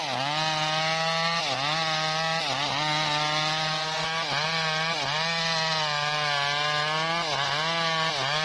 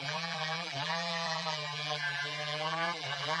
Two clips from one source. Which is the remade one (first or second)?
second